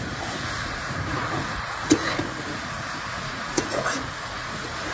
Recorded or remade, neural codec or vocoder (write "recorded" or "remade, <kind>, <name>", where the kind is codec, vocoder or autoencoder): remade, vocoder, Vocos